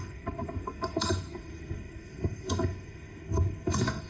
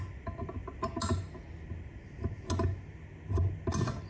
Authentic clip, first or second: second